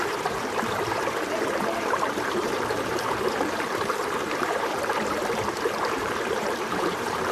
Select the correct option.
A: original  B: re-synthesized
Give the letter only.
B